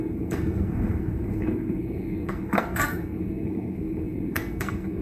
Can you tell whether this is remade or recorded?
remade